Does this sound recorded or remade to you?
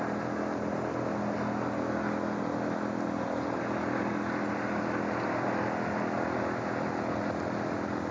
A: recorded